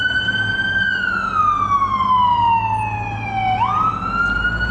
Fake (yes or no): no